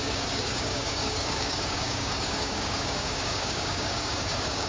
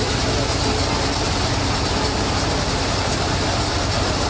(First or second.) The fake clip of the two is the first